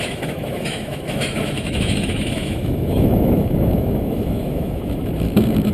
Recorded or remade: remade